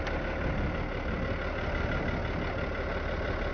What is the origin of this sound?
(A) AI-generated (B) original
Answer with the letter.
B